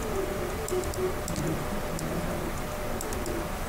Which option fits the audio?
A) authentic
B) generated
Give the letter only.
A